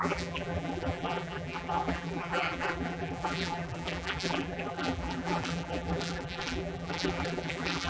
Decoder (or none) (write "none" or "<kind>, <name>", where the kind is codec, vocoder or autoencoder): vocoder, BigVGAN v2